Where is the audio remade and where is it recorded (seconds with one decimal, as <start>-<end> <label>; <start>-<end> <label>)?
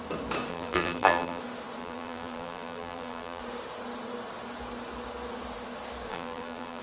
0.0-0.5 recorded; 0.5-1.4 remade; 1.4-1.8 recorded; 1.8-3.4 remade; 3.4-6.1 recorded; 6.1-6.8 remade